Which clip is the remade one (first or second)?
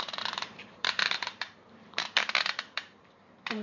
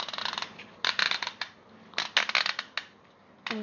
first